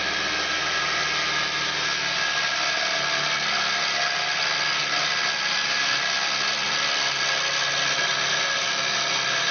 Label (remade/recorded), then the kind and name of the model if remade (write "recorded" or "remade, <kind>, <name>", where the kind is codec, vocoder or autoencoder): recorded